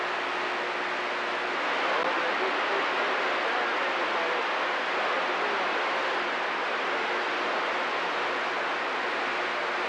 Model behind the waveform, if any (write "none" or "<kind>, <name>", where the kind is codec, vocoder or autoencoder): none